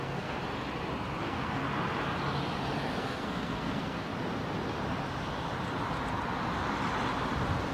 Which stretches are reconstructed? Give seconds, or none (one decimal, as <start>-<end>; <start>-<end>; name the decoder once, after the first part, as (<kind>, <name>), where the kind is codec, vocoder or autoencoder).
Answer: 0.0-0.4 (codec, SNAC); 1.2-1.6; 2.9-4.1